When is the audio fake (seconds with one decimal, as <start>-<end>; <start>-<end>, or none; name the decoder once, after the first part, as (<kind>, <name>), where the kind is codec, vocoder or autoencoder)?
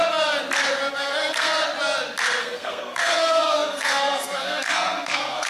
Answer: 0.9-1.5 (codec, SNAC); 2.4-5.5